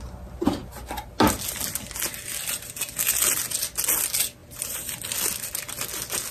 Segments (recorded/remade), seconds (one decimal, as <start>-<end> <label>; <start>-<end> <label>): 0.0-6.3 recorded